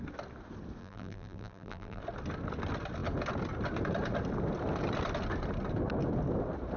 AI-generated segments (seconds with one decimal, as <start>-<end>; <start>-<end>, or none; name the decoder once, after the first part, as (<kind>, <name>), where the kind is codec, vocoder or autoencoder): 0.8-2.0 (vocoder, BigVGAN v2)